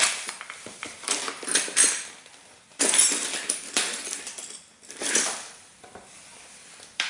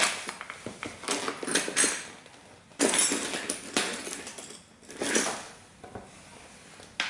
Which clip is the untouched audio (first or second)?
second